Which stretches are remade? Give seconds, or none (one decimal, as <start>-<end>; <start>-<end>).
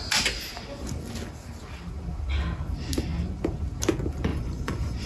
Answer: 4.3-5.1